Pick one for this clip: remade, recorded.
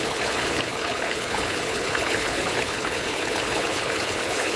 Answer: remade